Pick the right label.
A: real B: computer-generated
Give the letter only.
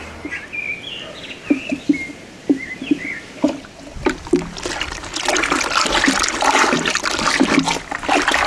A